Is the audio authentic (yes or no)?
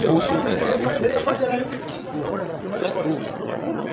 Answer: no